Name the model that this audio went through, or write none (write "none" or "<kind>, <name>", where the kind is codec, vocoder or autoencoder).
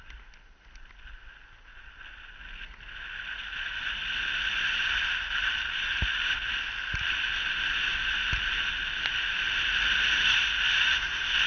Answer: none